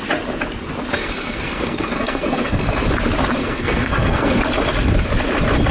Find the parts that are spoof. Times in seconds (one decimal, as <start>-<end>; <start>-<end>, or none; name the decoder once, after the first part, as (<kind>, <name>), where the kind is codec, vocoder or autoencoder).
1.0-2.6 (codec, SNAC); 3.4-4.4